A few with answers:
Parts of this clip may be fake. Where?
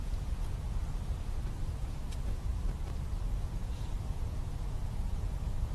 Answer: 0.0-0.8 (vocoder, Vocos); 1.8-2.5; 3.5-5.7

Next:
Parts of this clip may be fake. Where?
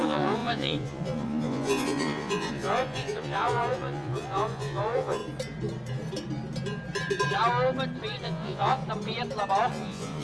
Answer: 0.0-5.2 (vocoder, Vocos); 8.2-8.8; 9.7-10.2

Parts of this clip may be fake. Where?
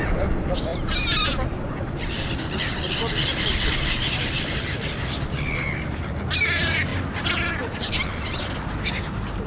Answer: none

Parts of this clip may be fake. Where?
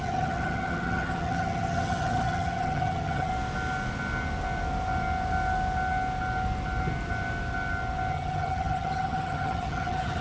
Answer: 0.0-3.3 (vocoder, HiFi-GAN); 8.1-10.2